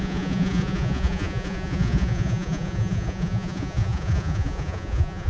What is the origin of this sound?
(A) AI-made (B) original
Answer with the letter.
A